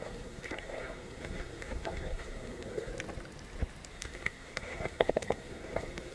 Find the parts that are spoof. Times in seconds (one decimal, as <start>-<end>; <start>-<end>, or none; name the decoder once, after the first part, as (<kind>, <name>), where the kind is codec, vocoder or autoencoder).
0.0-2.9 (codec, SNAC); 3.9-6.1